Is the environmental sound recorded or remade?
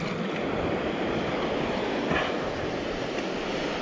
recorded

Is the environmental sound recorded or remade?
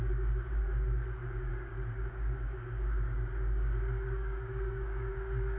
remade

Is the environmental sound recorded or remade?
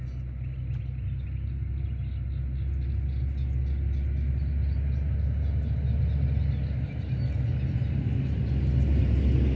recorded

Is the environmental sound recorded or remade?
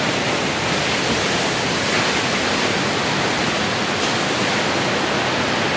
recorded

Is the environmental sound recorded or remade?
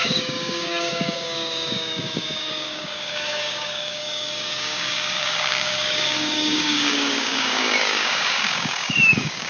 remade